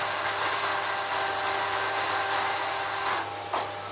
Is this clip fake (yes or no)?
no